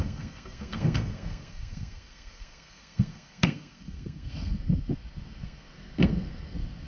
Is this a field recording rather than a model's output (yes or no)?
no